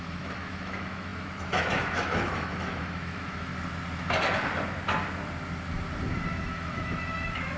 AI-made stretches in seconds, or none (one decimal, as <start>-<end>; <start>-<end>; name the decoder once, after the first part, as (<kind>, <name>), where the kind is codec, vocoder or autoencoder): 0.0-3.5 (autoencoder, DAC-VAE); 6.4-7.6